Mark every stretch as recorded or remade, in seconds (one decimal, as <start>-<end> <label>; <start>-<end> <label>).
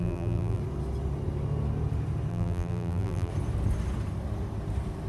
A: 0.0-0.6 remade; 0.6-2.3 recorded; 2.3-3.3 remade; 3.3-5.1 recorded